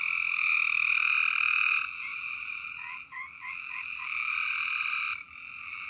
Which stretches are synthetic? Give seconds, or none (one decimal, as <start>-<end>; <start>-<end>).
0.0-5.9